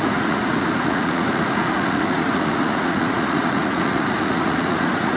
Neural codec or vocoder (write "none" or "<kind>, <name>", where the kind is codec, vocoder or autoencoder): vocoder, Vocos